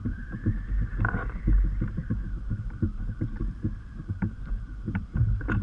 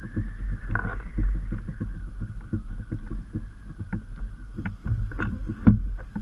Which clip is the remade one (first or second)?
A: first